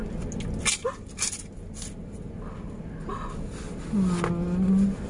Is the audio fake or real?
real